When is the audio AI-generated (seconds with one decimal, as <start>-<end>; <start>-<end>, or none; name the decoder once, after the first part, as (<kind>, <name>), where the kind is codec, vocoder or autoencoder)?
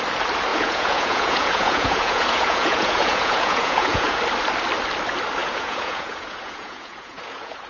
0.5-4.2 (vocoder, Vocos); 5.4-7.7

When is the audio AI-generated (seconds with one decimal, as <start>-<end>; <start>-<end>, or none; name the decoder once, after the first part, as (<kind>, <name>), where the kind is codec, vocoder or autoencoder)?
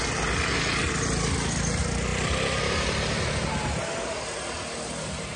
none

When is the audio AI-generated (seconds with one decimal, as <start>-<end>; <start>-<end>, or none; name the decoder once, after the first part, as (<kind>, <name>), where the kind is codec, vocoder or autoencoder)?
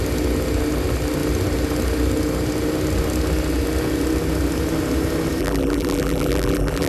5.4-6.9 (vocoder, BigVGAN v2)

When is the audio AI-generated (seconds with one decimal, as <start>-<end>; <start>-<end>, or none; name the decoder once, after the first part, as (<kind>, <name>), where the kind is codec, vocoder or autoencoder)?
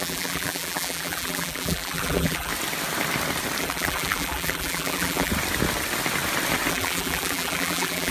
0.0-2.5 (vocoder, BigVGAN v2); 3.6-5.3; 6.7-8.1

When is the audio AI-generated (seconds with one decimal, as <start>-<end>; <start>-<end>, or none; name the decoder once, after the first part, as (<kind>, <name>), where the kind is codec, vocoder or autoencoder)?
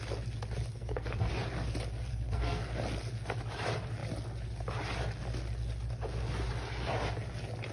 0.7-1.3 (codec, SNAC); 2.1-2.7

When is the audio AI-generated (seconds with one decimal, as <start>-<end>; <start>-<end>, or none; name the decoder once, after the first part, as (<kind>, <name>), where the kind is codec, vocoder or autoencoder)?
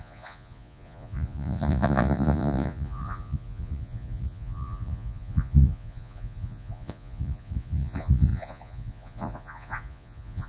0.0-10.5 (vocoder, Vocos)